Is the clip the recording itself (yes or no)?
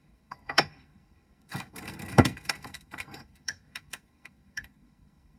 no